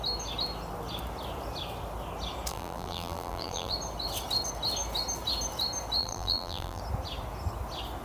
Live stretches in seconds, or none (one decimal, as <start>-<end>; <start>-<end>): 0.0-2.5; 3.7-6.0; 6.8-8.0

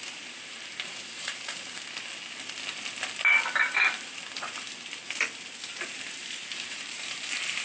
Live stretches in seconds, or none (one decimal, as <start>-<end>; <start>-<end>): 2.1-5.7